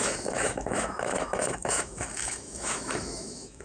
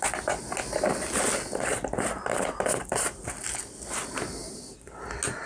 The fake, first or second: first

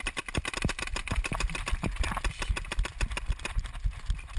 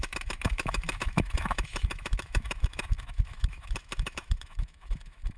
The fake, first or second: second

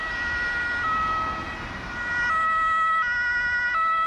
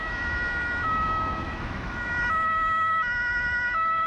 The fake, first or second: second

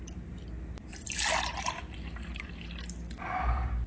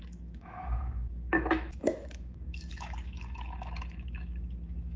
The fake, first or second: second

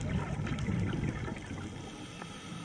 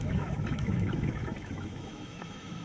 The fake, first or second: second